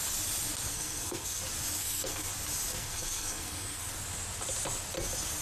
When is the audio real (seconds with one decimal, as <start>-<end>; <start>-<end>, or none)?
0.0-0.7; 1.4-1.8; 2.3-2.7; 3.9-5.4